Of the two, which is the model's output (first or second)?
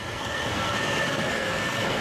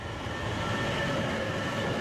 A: first